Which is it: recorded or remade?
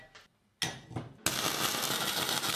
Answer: recorded